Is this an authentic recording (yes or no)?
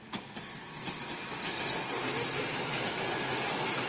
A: yes